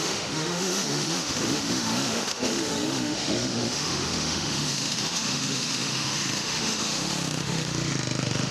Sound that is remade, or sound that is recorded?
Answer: remade